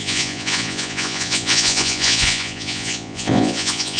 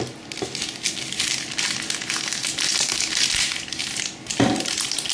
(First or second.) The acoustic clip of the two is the second